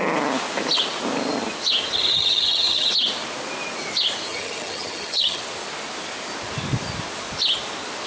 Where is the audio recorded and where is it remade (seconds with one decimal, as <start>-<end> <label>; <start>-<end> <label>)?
0.0-2.1 recorded; 2.1-2.9 remade; 2.9-4.3 recorded; 4.3-5.4 remade; 5.4-8.1 recorded